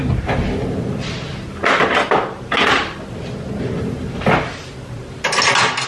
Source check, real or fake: real